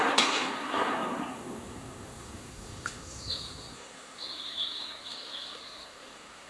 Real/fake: fake